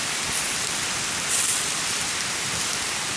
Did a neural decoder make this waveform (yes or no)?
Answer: no